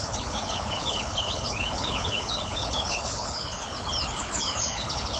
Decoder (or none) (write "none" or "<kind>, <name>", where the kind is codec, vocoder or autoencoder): codec, HILCodec